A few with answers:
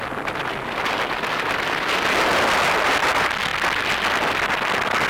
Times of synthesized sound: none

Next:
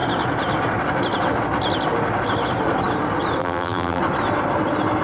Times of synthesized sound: 3.4-4.0 (vocoder, BigVGAN v2)

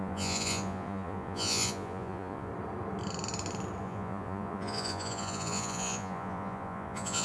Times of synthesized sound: 0.0-2.5 (vocoder, Vocos); 3.8-7.2

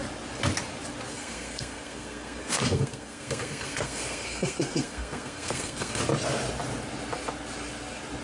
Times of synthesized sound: 1.1-6.0 (codec, SNAC)

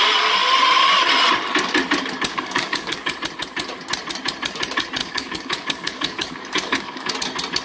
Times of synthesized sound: 2.3-3.1 (codec, DAC); 5.0-7.1

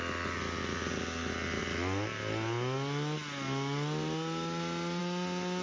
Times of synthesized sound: none

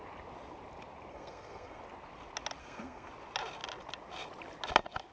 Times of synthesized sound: 1.1-1.8 (codec, SNAC); 2.6-3.1

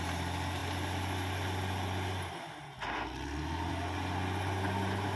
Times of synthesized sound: none